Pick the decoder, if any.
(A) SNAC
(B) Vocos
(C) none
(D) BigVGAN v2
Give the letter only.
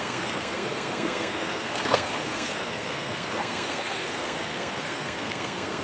A